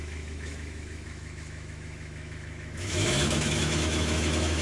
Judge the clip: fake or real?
fake